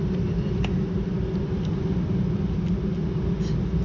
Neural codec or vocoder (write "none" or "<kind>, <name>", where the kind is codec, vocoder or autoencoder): none